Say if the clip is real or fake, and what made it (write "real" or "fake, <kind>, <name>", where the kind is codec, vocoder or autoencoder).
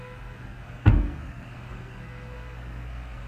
fake, codec, SNAC